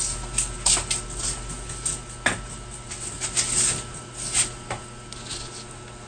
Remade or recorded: recorded